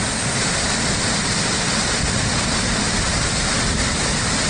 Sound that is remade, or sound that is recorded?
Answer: recorded